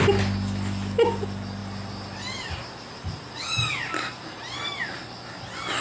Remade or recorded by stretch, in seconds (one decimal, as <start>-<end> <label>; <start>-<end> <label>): 0.0-5.8 recorded